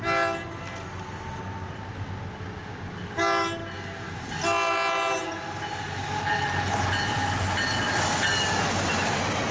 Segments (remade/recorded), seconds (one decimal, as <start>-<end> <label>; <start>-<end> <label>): 0.0-9.5 recorded